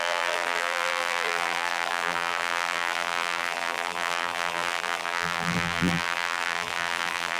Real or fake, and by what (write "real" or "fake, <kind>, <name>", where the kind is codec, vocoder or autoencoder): fake, vocoder, BigVGAN v2